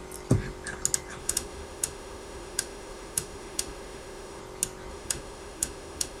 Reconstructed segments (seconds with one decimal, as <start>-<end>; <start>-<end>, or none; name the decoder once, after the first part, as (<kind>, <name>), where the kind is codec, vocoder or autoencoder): 1.2-4.4 (autoencoder, DAC-VAE); 4.9-6.2